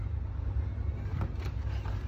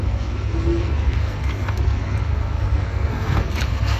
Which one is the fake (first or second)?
second